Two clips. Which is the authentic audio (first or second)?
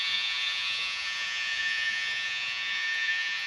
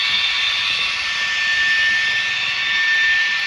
second